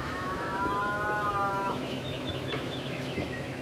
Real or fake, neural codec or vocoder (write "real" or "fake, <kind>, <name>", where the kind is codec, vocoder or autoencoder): fake, autoencoder, DAC-VAE